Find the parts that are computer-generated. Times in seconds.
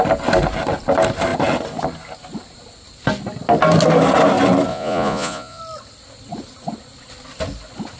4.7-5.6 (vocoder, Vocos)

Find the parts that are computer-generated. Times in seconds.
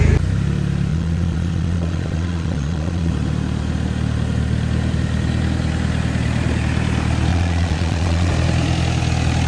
0.9-3.1 (vocoder, Vocos); 7.3-8.3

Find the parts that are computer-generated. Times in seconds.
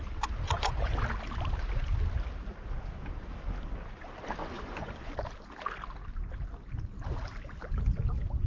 4.4-5.1 (vocoder, Vocos)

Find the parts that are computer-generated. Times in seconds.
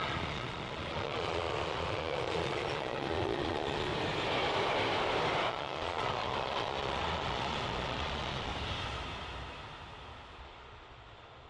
0.0-3.9 (vocoder, Vocos); 5.5-8.5; 10.4-11.5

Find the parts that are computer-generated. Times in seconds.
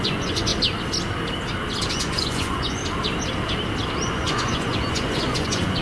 0.0-0.5 (vocoder, Vocos); 1.9-2.8; 4.1-5.8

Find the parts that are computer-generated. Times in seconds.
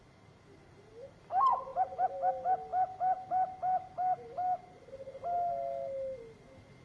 none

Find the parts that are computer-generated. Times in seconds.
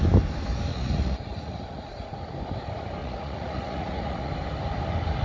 0.7-2.2 (vocoder, Vocos); 3.0-4.3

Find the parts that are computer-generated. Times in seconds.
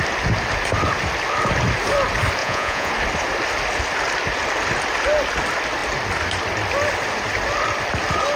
2.4-2.9 (vocoder, Vocos)